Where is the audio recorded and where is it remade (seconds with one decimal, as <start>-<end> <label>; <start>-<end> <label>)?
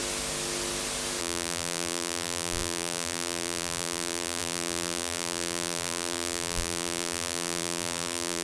0.0-1.2 recorded; 1.2-8.4 remade